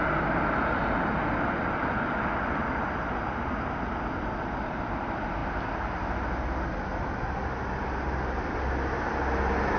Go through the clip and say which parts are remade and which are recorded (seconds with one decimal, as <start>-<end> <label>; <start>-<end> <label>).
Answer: 0.0-9.8 recorded